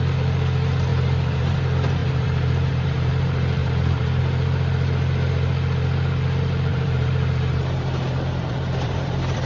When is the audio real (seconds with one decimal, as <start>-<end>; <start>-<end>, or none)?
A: 0.0-0.9; 1.6-2.0; 3.1-3.6; 4.2-6.7